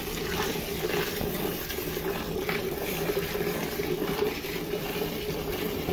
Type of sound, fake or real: fake